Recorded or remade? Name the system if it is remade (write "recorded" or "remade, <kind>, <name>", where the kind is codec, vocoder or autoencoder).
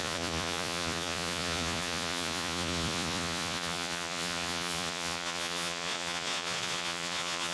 remade, vocoder, Vocos